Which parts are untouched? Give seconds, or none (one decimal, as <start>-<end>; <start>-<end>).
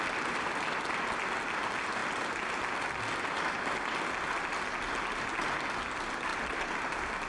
0.0-7.3